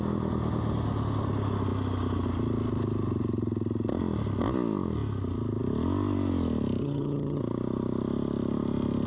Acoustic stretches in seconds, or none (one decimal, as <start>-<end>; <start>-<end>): 0.0-6.8; 7.4-9.1